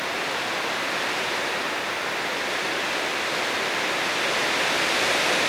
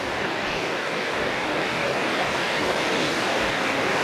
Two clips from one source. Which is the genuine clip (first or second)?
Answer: first